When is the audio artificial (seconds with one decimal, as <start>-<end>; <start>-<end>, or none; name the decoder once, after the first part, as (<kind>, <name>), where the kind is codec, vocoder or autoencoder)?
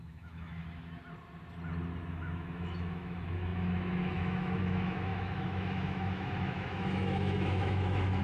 0.0-0.6 (autoencoder, DAC-VAE); 2.1-8.2